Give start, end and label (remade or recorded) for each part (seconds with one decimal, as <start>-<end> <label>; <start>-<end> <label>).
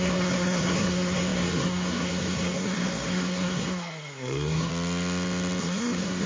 0.0-4.7 remade; 4.7-5.6 recorded; 5.6-6.3 remade